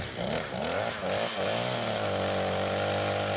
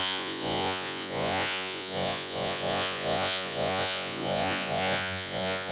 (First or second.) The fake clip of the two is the second